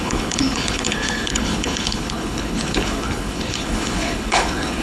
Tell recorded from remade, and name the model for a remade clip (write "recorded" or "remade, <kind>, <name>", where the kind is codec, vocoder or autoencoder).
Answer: remade, codec, HILCodec